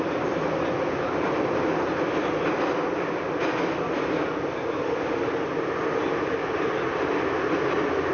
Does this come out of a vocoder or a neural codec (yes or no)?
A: no